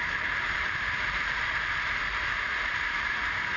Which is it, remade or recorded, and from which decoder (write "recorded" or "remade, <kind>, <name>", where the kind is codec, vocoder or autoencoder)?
remade, vocoder, BigVGAN v2